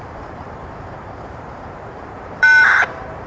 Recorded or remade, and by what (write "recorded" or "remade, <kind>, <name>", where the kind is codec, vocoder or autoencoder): remade, vocoder, BigVGAN v2